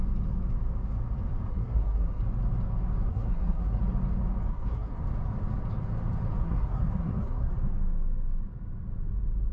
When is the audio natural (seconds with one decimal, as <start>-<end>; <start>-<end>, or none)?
0.0-1.5; 2.2-3.1; 3.8-4.5; 5.0-6.4; 7.5-9.5